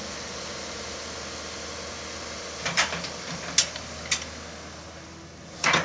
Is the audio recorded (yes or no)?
yes